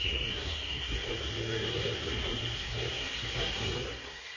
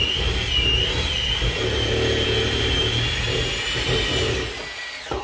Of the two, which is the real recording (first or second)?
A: second